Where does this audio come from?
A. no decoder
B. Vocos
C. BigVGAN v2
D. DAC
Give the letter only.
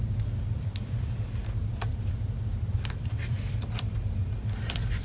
C